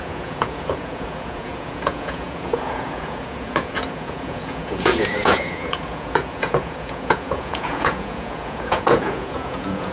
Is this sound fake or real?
fake